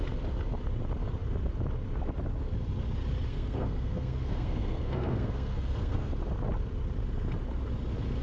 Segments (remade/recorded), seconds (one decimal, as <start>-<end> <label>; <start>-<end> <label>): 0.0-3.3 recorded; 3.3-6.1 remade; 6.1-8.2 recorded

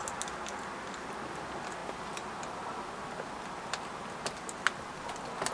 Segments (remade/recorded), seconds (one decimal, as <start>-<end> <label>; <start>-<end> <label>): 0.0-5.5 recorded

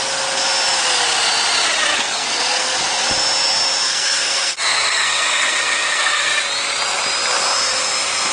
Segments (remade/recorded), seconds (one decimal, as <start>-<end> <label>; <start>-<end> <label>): 0.0-1.9 recorded; 1.9-2.8 remade; 2.8-3.9 recorded; 3.9-6.3 remade; 6.3-8.3 recorded

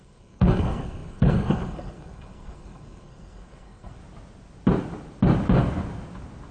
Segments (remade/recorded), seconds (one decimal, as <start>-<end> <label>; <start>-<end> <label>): 0.0-4.0 remade; 4.0-6.5 recorded

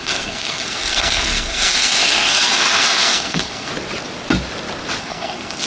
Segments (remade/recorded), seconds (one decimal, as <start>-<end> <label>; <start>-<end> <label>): 0.0-3.7 remade; 3.7-5.0 recorded; 5.0-5.7 remade

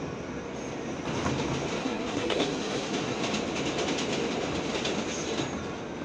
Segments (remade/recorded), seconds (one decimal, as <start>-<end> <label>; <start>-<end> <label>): 0.0-1.8 recorded; 1.8-3.2 remade; 3.2-6.0 recorded